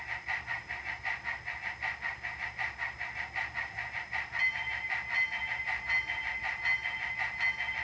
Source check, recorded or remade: recorded